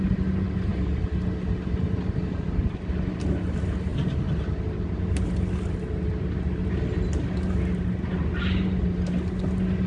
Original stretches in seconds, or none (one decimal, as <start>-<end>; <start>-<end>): 0.0-9.9